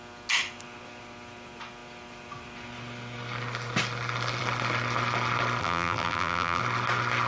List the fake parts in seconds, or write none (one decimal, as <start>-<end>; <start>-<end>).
5.6-6.6